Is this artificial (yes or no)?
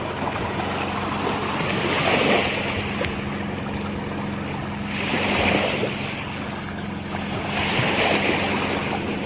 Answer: no